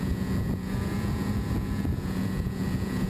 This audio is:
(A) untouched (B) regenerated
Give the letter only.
B